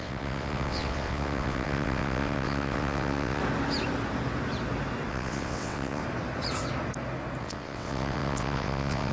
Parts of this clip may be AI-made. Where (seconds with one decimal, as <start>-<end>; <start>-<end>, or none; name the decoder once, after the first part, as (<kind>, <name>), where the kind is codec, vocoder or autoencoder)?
0.0-3.4 (vocoder, WaveNeXt); 5.1-6.0; 7.4-9.1

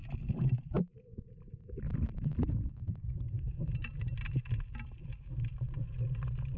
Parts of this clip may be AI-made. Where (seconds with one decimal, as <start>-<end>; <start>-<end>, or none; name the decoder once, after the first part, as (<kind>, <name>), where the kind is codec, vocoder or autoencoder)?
none